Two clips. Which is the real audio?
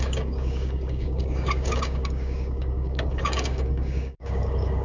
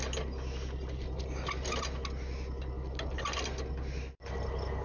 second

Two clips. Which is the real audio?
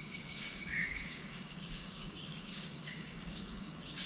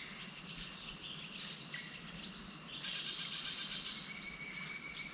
second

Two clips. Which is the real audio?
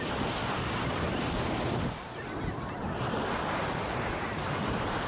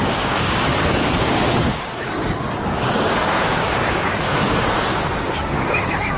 first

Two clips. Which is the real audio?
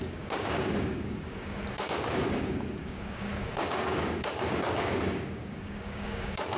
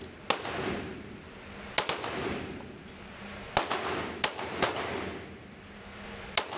second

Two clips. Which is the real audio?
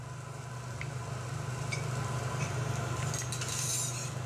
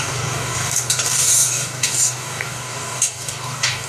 first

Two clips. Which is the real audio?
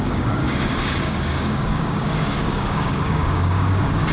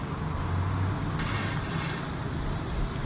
second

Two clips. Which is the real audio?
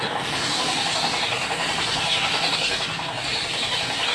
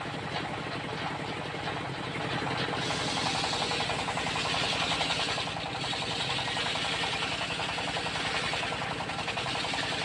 second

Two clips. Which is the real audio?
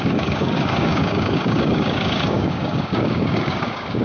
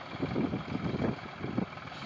second